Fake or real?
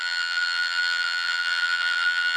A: fake